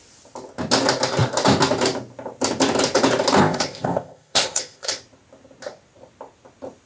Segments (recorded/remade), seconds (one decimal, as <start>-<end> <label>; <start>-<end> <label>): 0.0-3.4 recorded; 3.4-5.0 remade; 5.0-6.9 recorded